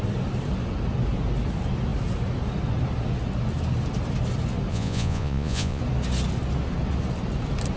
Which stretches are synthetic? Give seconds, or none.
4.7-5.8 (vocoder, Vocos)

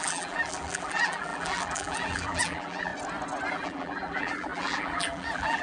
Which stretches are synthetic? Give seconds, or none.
0.0-2.9 (vocoder, BigVGAN v2); 3.5-5.6

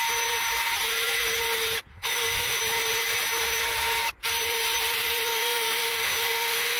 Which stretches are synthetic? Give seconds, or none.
1.9-2.6 (autoencoder, DAC-VAE); 5.3-6.8

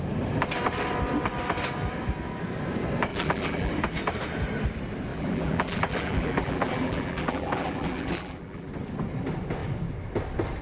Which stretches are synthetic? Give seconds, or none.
3.1-3.7 (vocoder, BigVGAN v2); 5.1-8.7